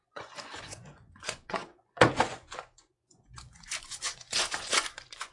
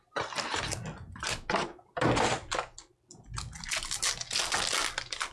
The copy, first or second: first